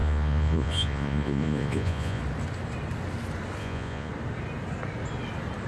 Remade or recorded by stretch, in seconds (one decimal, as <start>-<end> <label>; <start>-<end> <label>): 0.0-2.2 remade; 2.2-3.6 recorded; 3.6-4.1 remade; 4.1-5.7 recorded